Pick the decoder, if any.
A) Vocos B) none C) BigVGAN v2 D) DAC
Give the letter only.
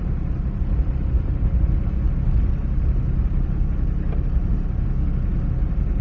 B